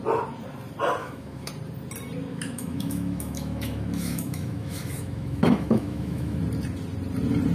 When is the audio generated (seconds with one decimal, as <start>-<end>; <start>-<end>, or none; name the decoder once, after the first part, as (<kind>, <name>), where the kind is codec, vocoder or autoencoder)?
1.0-1.5 (autoencoder, DAC-VAE); 2.3-6.4